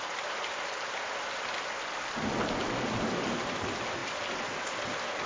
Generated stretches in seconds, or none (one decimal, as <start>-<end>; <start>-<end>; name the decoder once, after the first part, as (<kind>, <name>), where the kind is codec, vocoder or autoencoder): none